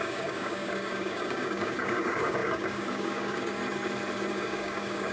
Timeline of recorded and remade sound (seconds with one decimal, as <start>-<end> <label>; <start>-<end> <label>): 0.0-3.6 remade; 3.6-4.3 recorded; 4.3-5.1 remade